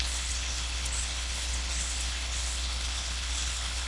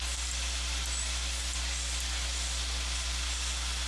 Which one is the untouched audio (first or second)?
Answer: second